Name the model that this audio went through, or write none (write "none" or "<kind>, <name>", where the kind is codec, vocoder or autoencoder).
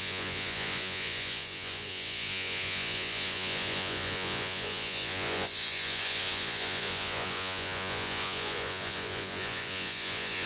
vocoder, Vocos